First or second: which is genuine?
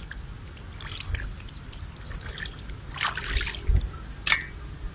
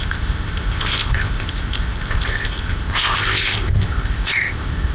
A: first